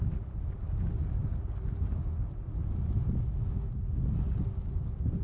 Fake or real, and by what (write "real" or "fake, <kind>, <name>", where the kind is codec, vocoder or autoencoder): real